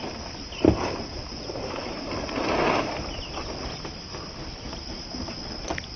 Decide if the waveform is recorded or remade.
recorded